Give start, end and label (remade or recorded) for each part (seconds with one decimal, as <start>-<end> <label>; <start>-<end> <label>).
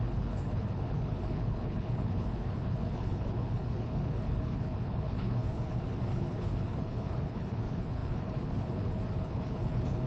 0.0-10.1 remade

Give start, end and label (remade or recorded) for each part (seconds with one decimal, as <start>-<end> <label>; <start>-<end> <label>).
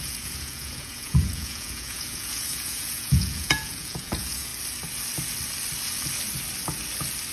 0.0-4.5 remade; 4.5-7.3 recorded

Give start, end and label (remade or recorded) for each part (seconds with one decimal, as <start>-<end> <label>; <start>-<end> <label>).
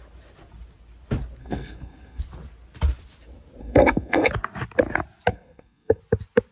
0.0-1.4 recorded; 1.4-2.2 remade; 2.2-3.6 recorded; 3.6-4.3 remade; 4.3-5.3 recorded; 5.3-6.0 remade; 6.0-6.5 recorded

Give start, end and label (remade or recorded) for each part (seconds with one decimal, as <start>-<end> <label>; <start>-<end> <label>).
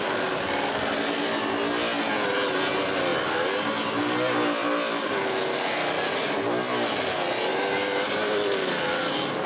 0.0-3.1 recorded; 3.1-3.9 remade; 3.9-7.5 recorded; 7.5-9.5 remade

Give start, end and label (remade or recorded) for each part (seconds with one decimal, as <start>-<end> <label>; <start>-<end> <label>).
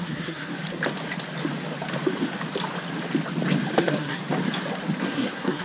0.0-0.5 remade; 0.5-3.8 recorded; 3.8-4.2 remade; 4.2-5.0 recorded; 5.0-5.6 remade